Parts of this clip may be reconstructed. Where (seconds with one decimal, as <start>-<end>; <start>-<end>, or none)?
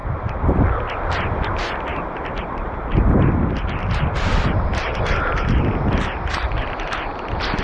0.0-3.8; 6.3-7.6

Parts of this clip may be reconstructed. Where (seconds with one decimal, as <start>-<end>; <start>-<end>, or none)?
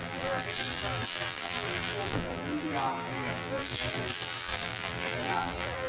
0.0-5.9